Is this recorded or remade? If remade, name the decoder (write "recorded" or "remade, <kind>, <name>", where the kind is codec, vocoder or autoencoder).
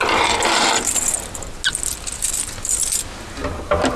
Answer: recorded